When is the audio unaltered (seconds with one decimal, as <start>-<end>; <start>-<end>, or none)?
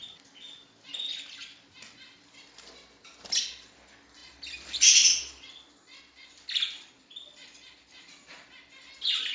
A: 0.0-9.3